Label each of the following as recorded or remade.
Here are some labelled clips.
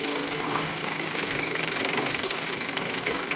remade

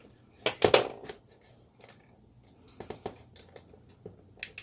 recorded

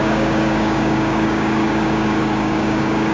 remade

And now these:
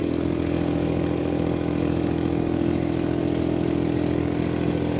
remade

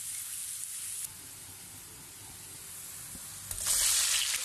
recorded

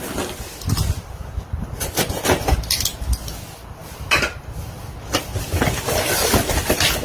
recorded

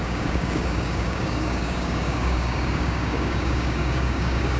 remade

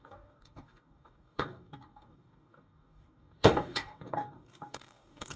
remade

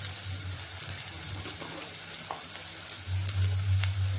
recorded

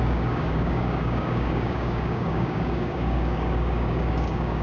remade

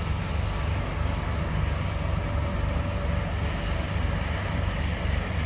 recorded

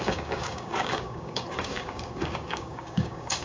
remade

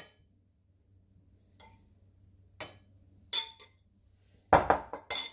recorded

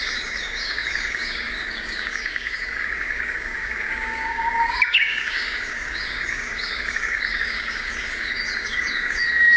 remade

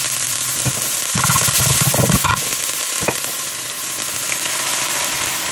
recorded